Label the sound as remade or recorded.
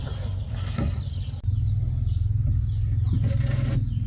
recorded